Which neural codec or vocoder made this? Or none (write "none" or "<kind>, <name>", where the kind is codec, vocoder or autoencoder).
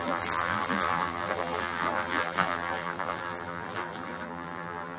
vocoder, BigVGAN v2